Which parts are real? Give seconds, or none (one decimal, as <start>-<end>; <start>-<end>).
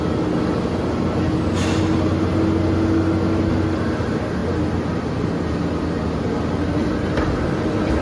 0.0-8.0